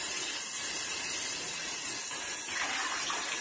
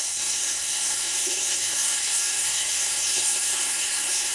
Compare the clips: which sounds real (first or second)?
first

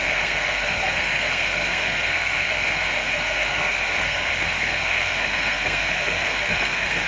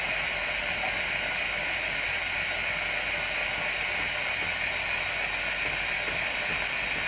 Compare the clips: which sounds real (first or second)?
second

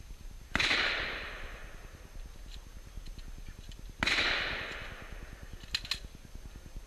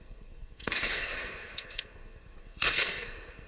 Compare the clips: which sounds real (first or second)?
first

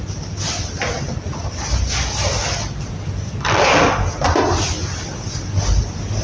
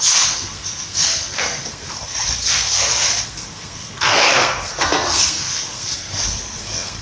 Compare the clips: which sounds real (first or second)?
first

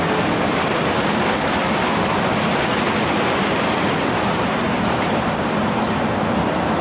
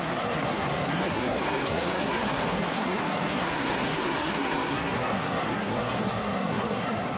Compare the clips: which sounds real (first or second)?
first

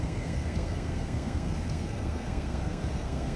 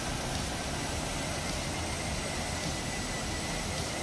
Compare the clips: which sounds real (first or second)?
second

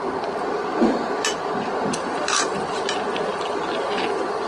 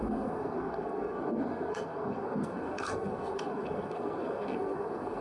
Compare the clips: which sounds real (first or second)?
first